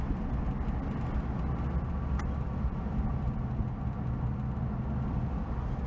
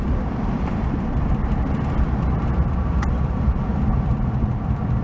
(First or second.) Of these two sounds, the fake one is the second